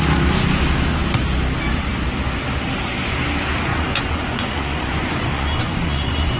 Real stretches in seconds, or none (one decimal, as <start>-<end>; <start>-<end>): 0.0-3.7